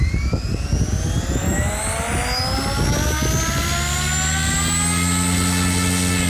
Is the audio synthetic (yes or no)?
no